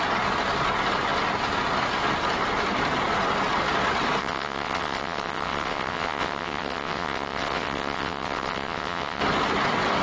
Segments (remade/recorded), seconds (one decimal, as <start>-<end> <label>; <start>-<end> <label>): 0.0-4.2 recorded; 4.2-9.2 remade; 9.2-10.0 recorded